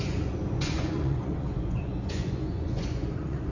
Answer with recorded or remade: remade